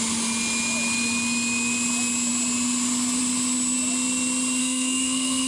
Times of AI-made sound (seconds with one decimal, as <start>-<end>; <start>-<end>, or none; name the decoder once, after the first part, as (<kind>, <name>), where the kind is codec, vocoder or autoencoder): 4.6-5.5 (codec, SNAC)